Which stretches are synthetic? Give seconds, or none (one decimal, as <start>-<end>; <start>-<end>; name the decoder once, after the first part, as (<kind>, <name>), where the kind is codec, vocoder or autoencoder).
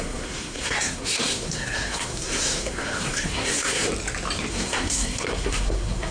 0.0-3.9 (codec, SNAC); 4.5-6.1